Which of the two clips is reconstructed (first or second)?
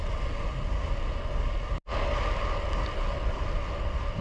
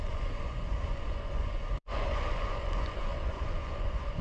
second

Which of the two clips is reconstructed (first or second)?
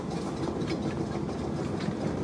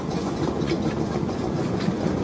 second